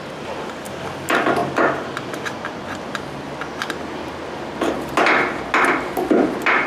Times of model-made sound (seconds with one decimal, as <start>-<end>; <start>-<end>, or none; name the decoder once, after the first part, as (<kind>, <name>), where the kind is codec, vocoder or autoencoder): none